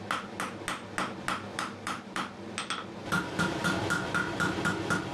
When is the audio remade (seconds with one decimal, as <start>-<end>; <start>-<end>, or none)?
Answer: 1.5-2.5; 3.0-3.8